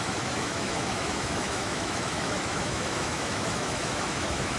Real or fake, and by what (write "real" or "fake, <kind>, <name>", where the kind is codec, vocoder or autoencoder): fake, autoencoder, DAC-VAE